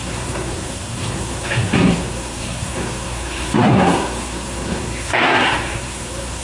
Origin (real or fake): fake